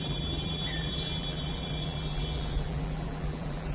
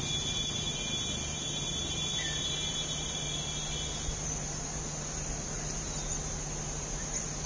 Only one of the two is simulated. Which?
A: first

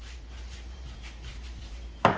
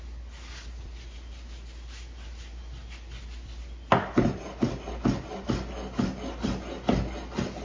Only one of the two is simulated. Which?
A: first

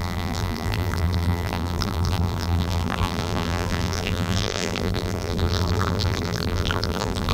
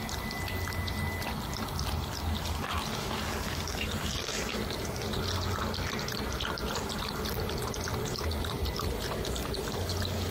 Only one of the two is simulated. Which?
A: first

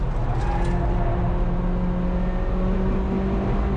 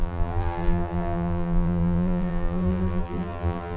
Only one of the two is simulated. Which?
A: second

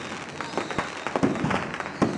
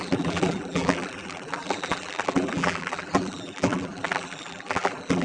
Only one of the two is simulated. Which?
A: second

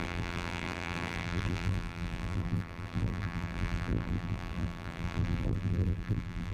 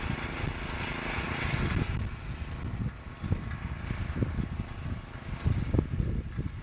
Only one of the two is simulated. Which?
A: first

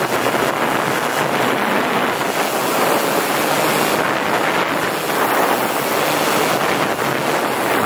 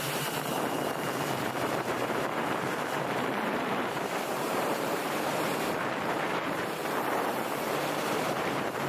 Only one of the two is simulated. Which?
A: second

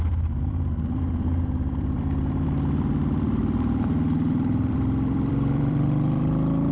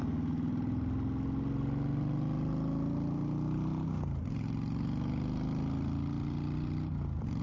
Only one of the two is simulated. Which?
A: first